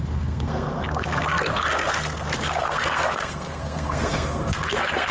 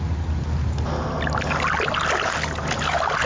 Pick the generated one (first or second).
first